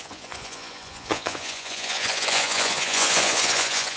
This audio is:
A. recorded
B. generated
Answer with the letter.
B